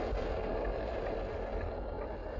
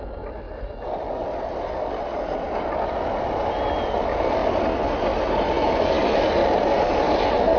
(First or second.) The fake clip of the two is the second